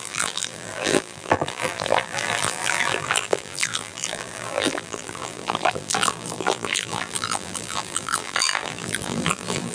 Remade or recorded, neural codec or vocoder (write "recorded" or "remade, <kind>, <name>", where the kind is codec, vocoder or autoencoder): remade, vocoder, BigVGAN v2